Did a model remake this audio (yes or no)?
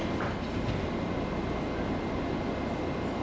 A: no